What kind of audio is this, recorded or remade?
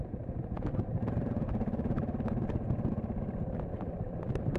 remade